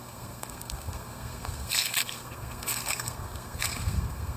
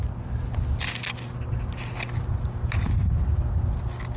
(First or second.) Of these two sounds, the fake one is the first